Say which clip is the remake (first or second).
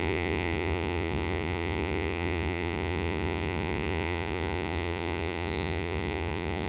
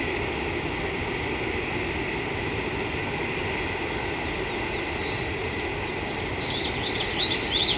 first